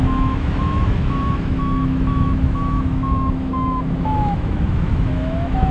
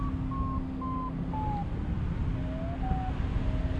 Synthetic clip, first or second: first